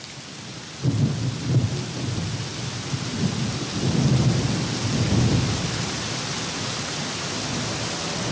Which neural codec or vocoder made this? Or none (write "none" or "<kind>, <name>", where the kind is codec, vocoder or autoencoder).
none